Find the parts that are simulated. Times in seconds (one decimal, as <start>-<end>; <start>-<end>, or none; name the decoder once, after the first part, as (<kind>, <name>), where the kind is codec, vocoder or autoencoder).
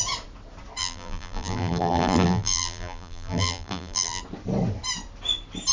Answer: 0.8-4.2 (vocoder, BigVGAN v2)